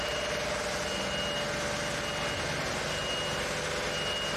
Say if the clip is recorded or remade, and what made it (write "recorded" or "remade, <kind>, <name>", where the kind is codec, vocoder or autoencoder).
recorded